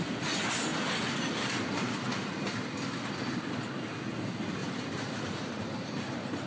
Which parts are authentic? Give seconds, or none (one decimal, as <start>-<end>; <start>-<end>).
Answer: 0.0-4.6

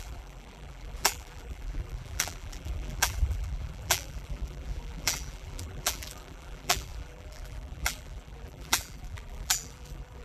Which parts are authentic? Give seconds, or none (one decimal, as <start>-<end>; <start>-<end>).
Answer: none

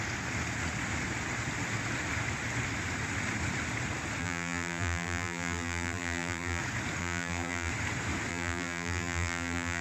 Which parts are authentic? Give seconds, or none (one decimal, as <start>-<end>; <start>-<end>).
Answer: 0.0-4.2; 6.6-7.0; 7.7-8.3

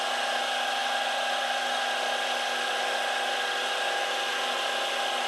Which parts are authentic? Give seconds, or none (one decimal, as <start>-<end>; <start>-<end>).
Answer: 0.0-5.3

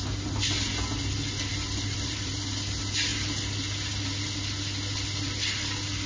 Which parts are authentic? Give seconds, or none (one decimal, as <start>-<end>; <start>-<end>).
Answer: 0.0-1.5; 2.3-6.1